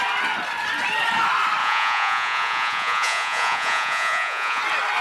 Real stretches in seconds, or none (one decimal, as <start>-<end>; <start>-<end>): 0.0-1.6; 4.6-5.0